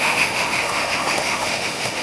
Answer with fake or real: fake